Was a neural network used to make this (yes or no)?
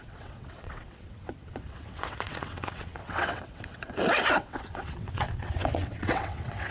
yes